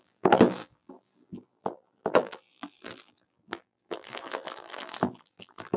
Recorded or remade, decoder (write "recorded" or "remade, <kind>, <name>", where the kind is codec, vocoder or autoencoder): remade, vocoder, BigVGAN v2